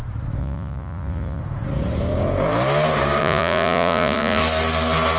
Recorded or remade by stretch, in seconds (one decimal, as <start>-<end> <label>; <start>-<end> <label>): 0.0-0.4 recorded; 0.4-1.4 remade; 1.4-3.2 recorded; 3.2-4.4 remade; 4.4-5.2 recorded